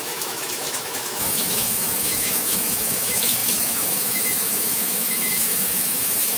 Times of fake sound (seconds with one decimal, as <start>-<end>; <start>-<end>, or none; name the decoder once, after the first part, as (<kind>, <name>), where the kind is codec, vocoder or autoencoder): 0.0-6.4 (autoencoder, DAC-VAE)